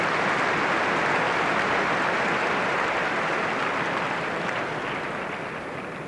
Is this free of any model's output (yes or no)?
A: yes